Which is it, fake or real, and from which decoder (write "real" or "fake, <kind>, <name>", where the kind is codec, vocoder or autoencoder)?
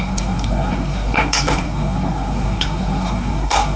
fake, codec, SNAC